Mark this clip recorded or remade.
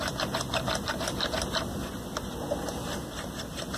recorded